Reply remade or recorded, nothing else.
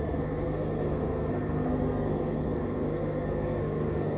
remade